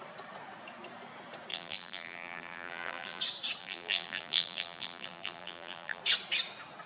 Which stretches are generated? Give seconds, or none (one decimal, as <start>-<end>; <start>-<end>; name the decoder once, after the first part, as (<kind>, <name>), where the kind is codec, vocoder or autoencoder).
1.5-3.2 (vocoder, BigVGAN v2); 3.6-6.0